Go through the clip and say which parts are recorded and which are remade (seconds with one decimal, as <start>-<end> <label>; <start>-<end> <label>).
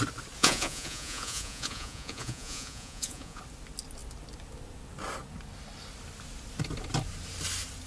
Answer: 0.0-0.4 recorded; 0.4-3.4 remade; 3.4-7.9 recorded